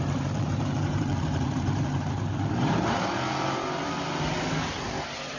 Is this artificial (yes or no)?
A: yes